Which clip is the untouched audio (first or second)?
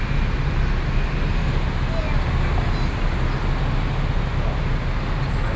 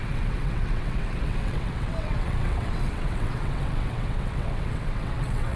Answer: first